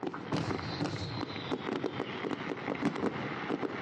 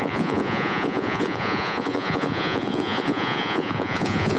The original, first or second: first